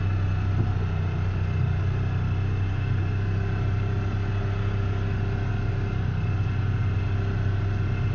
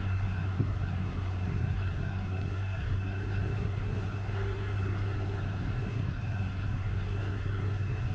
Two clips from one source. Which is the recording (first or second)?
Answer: first